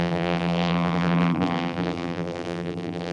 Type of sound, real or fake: fake